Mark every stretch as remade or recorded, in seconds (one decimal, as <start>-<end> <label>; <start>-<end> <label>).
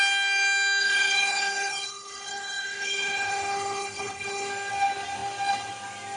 0.0-0.8 recorded; 0.8-4.5 remade; 4.5-6.2 recorded